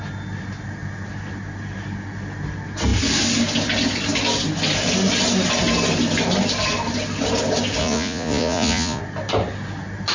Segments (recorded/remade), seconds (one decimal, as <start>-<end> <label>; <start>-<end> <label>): 0.0-7.8 recorded; 7.8-9.0 remade; 9.0-10.1 recorded